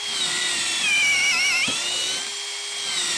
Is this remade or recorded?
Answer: recorded